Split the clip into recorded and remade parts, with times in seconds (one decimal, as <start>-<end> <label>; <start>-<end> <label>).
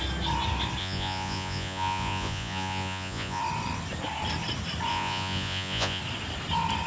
0.0-0.8 recorded; 0.8-3.4 remade; 3.4-4.9 recorded; 4.9-6.0 remade; 6.0-6.9 recorded